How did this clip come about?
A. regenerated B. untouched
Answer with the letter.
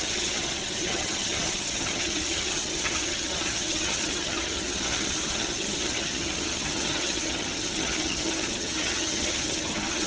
A